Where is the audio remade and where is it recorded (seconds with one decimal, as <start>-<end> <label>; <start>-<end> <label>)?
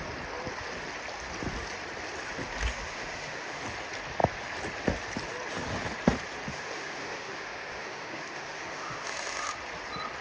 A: 0.0-2.7 recorded; 2.7-3.6 remade; 3.6-6.5 recorded; 6.5-9.5 remade; 9.5-10.2 recorded